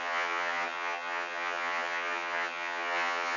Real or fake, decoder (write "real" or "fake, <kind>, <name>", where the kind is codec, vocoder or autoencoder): fake, vocoder, HiFi-GAN